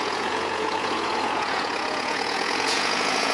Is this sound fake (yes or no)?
yes